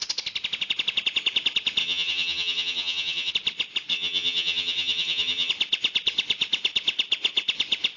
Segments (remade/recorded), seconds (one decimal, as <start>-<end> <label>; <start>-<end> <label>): 0.0-1.8 recorded; 1.8-3.3 remade; 3.3-3.9 recorded; 3.9-5.5 remade; 5.5-8.0 recorded